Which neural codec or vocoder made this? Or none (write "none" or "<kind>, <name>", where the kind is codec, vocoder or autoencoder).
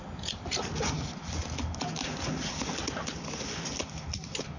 none